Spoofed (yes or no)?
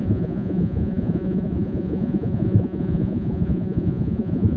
yes